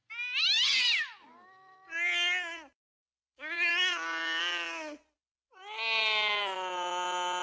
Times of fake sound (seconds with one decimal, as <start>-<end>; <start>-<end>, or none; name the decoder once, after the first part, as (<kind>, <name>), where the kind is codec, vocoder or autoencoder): none